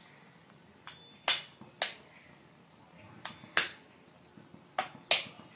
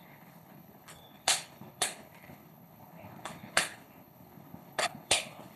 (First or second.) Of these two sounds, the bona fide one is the first